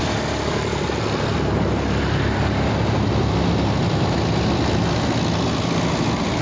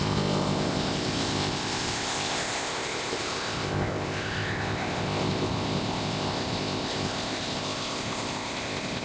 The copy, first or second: second